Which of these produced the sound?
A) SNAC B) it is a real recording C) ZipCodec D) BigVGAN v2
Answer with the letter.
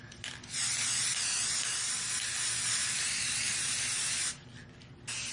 B